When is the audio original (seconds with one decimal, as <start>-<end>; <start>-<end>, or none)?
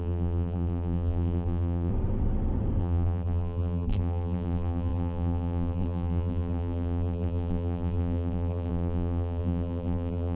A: 1.9-2.8